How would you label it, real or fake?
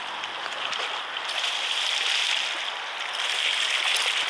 real